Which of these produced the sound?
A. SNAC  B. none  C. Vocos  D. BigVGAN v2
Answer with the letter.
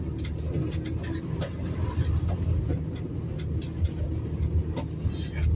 B